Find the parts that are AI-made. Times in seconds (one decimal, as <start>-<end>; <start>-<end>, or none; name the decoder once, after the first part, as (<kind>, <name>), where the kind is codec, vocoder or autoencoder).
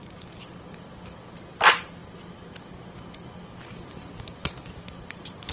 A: none